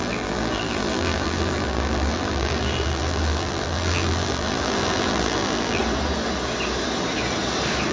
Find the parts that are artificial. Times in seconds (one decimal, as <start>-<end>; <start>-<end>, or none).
0.0-5.8